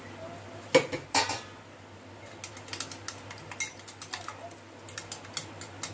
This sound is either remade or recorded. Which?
recorded